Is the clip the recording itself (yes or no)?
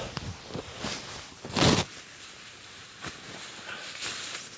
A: yes